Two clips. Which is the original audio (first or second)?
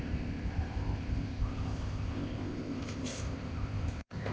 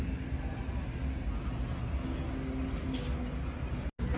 second